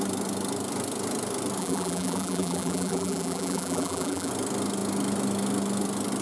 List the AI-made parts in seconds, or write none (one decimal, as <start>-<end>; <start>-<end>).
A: 1.6-4.3